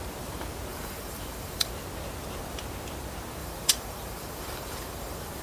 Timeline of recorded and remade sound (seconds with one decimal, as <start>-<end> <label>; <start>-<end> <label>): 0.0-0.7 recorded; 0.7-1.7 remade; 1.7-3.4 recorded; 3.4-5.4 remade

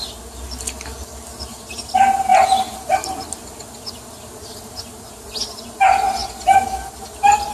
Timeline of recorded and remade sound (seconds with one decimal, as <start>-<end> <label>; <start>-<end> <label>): 0.0-7.5 recorded

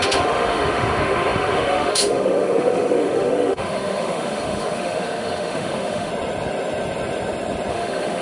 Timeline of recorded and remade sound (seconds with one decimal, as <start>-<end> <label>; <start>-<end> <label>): 0.0-6.1 remade; 6.1-7.7 recorded; 7.7-8.2 remade

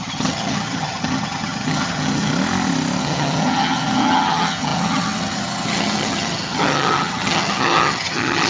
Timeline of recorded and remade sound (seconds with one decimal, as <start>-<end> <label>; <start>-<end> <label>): 0.0-2.3 remade; 2.3-3.0 recorded; 3.0-8.5 remade

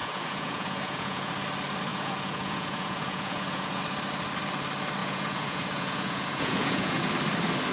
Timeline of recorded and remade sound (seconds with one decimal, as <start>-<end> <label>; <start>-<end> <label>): 0.0-1.3 remade; 1.3-1.9 recorded; 1.9-3.8 remade; 3.8-5.0 recorded; 5.0-7.0 remade; 7.0-7.7 recorded